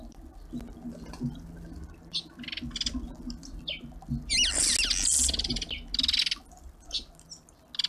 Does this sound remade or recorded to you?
recorded